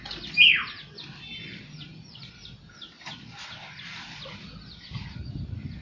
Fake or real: real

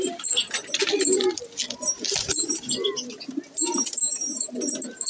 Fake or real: real